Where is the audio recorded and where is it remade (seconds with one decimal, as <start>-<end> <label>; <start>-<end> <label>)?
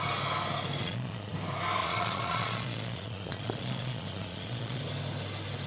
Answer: 0.0-0.8 recorded; 0.8-1.3 remade; 1.3-1.8 recorded; 1.8-4.8 remade; 4.8-5.7 recorded